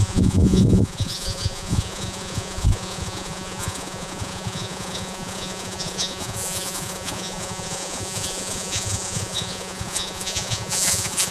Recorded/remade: remade